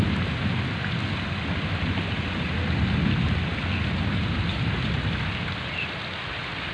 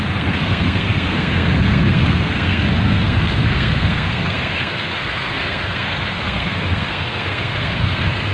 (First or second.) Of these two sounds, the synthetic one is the second